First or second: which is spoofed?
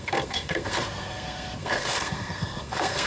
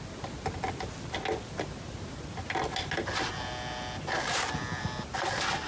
first